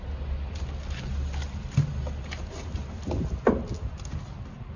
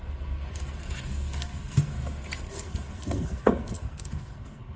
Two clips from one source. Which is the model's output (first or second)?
second